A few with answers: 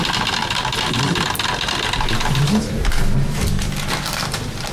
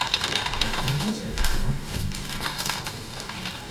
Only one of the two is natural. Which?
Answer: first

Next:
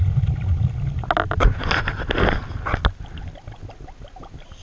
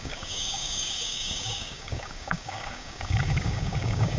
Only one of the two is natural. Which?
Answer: first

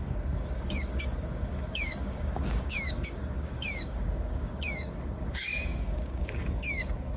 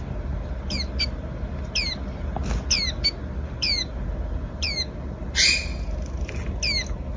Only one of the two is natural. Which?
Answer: second